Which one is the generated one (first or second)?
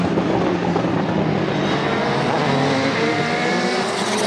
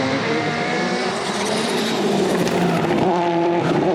second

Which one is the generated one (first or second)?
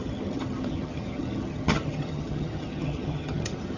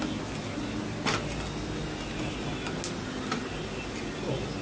first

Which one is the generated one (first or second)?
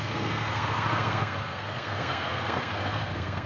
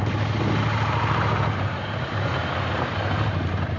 first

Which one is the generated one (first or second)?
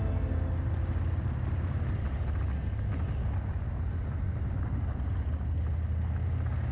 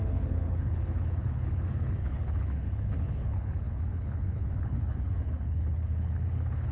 second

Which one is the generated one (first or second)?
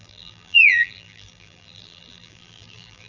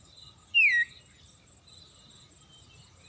first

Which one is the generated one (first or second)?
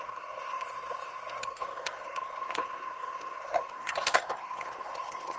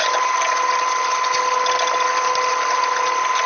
first